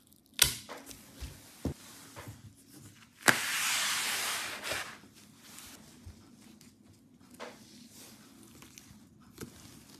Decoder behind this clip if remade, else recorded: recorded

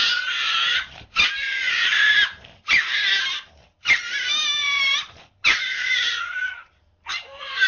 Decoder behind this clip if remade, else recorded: remade, vocoder, BigVGAN v2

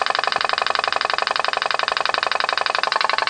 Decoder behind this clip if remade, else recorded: recorded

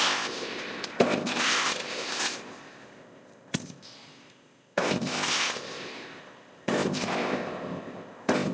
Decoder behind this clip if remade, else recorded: remade, codec, ZipCodec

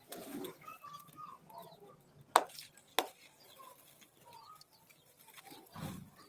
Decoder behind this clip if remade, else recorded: recorded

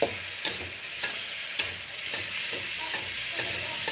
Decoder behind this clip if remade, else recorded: recorded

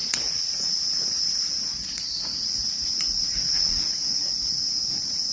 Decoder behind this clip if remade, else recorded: remade, vocoder, Vocos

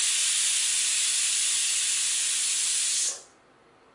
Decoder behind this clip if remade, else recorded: recorded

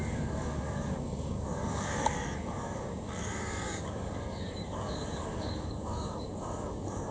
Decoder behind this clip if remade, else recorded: remade, codec, DAC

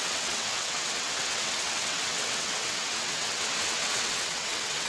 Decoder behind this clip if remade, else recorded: remade, vocoder, WaveNeXt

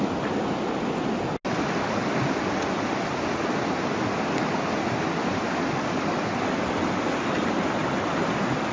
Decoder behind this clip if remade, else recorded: recorded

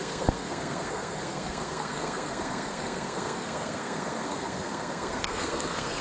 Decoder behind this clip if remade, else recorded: remade, codec, SNAC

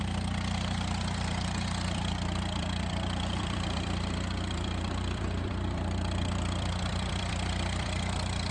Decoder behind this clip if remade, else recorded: remade, vocoder, BigVGAN v2